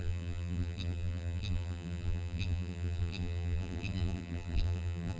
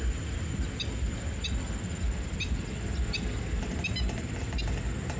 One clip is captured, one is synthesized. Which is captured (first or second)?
second